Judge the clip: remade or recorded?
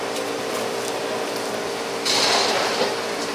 remade